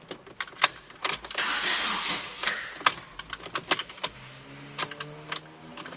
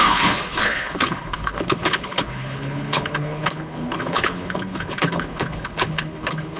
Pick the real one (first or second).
first